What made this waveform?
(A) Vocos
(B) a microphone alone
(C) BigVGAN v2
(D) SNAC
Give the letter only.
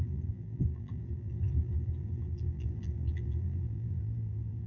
C